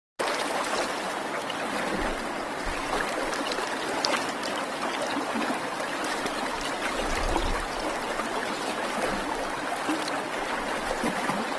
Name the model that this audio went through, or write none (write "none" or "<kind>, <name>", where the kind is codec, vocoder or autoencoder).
none